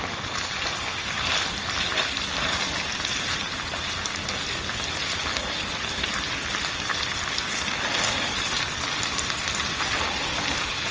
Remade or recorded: recorded